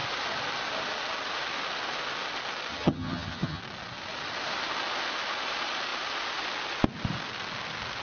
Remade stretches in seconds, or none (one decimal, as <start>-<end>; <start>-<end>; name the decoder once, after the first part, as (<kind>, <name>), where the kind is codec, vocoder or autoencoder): 2.7-3.6 (vocoder, HiFi-GAN)